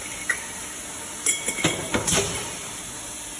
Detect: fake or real real